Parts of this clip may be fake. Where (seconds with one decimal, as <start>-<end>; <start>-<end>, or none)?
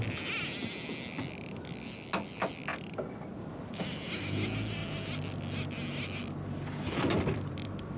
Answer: 0.0-2.7; 3.4-4.8; 7.2-8.0